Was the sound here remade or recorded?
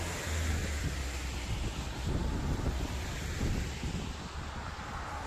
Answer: remade